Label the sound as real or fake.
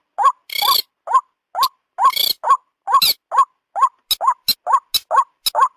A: real